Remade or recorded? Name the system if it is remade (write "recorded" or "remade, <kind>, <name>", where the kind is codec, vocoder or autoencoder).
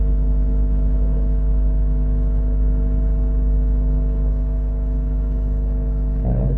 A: remade, codec, HILCodec